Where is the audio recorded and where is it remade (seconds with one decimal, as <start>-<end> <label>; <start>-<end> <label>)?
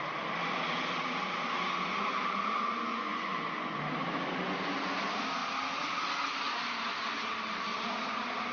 0.0-2.9 recorded; 2.9-3.8 remade; 3.8-8.5 recorded